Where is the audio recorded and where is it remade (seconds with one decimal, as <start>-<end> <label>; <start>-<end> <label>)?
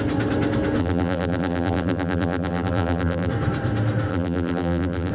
0.0-0.8 recorded; 0.8-3.3 remade; 3.3-4.1 recorded; 4.1-5.1 remade